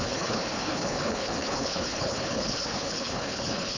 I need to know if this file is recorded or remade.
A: remade